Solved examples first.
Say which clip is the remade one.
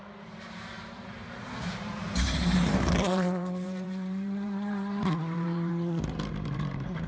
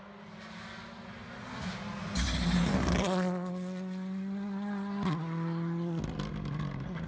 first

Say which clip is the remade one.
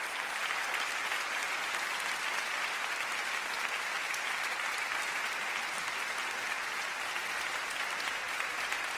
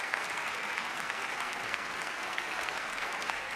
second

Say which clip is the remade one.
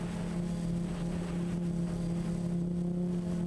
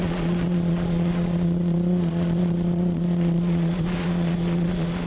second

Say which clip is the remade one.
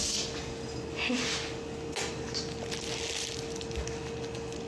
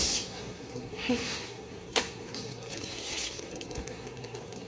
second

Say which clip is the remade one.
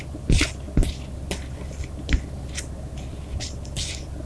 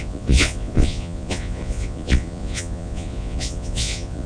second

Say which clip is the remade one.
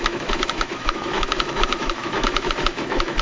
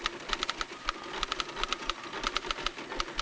first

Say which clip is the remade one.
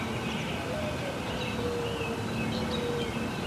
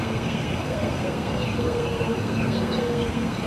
second